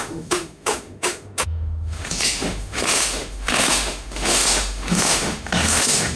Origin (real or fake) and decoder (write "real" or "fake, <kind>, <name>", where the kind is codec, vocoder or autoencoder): fake, autoencoder, DAC-VAE